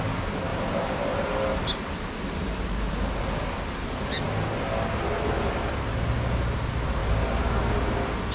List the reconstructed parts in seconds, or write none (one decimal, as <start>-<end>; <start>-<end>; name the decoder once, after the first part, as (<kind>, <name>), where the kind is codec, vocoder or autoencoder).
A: 0.5-1.1 (vocoder, BigVGAN v2)